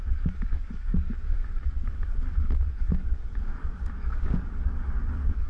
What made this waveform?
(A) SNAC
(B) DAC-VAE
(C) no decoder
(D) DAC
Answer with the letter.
D